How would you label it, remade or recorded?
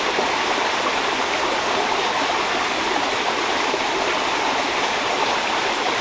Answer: remade